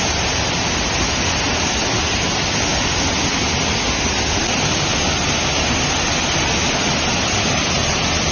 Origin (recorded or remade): recorded